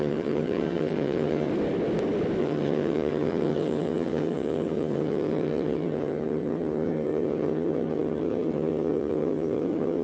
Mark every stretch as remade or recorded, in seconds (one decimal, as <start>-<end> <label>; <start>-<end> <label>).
0.0-1.5 remade; 1.5-2.4 recorded; 2.4-10.0 remade